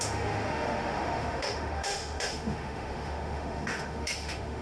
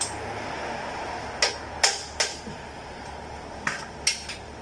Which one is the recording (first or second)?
second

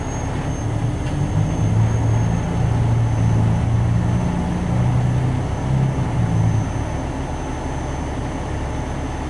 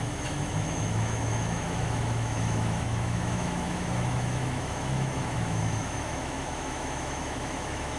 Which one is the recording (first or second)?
first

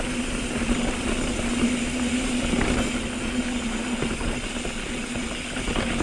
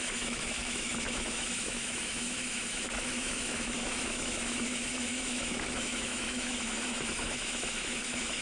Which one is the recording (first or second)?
first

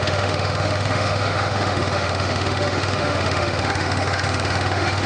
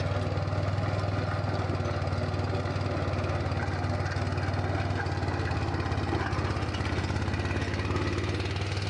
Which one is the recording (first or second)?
second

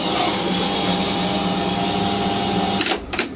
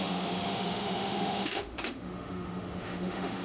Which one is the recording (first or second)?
first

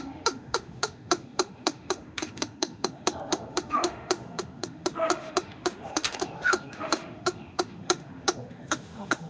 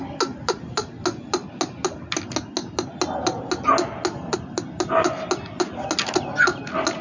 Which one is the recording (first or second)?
second